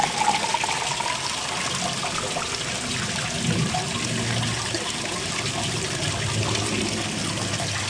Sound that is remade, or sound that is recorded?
recorded